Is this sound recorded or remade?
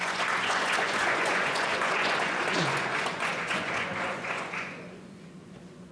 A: remade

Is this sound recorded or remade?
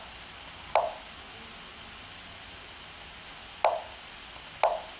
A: recorded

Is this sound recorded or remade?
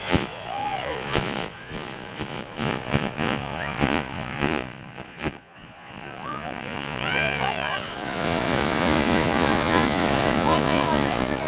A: remade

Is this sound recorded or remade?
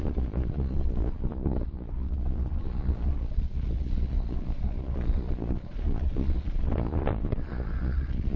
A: remade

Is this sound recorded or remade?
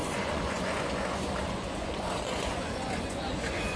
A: remade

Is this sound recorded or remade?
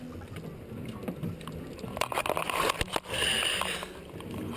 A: recorded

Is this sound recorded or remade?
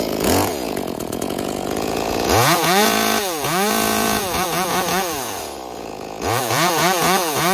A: remade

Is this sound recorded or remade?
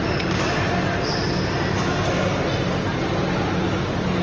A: recorded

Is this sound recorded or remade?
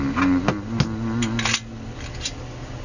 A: recorded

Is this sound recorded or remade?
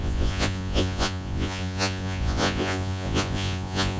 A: remade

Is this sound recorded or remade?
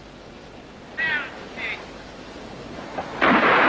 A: recorded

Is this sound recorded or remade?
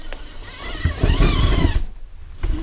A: recorded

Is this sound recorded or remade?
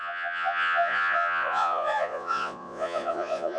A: remade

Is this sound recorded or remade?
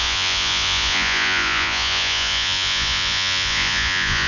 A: remade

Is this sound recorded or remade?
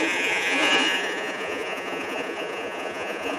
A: remade